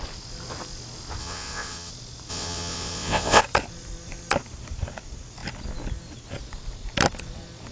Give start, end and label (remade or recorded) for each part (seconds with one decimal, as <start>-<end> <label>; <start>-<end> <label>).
0.0-1.2 recorded; 1.2-1.9 remade; 1.9-2.3 recorded; 2.3-3.4 remade; 3.4-7.7 recorded

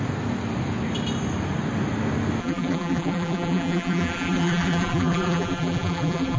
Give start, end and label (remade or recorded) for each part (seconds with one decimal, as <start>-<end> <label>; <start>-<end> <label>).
0.0-2.4 recorded; 2.4-6.4 remade

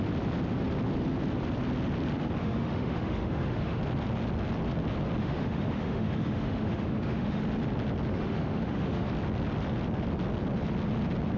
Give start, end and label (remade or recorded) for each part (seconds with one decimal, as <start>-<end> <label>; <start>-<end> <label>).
0.0-2.4 recorded; 2.4-3.8 remade; 3.8-5.2 recorded; 5.2-7.4 remade; 7.4-8.1 recorded; 8.1-9.1 remade; 9.1-11.4 recorded

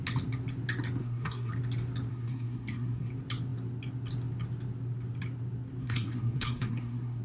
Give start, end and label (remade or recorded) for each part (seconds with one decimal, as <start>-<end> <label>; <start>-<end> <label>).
0.0-1.0 recorded; 1.0-1.5 remade; 1.5-2.1 recorded; 2.1-3.1 remade; 3.1-5.8 recorded; 5.8-7.2 remade